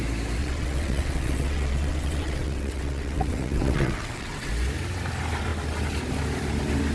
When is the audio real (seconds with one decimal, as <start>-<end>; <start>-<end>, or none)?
0.0-0.4; 4.5-6.9